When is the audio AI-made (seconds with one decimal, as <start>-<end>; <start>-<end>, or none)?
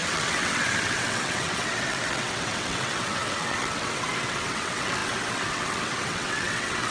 0.0-6.9